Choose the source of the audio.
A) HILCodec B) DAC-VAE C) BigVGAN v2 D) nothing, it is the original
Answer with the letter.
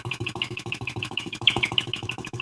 B